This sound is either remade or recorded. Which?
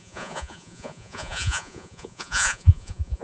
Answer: remade